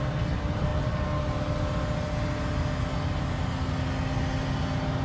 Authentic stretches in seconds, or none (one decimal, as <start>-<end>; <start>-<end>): 0.0-5.0